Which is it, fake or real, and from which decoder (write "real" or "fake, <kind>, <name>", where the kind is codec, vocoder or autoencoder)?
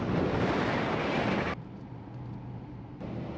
real